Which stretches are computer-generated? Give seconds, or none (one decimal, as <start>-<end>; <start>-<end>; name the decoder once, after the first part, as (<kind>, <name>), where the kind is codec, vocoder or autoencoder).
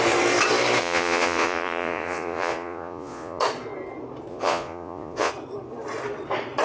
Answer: 0.8-3.4 (vocoder, Vocos); 4.3-5.3